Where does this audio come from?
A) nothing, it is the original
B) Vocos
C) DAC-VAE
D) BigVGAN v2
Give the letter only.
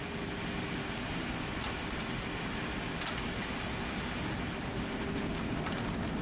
A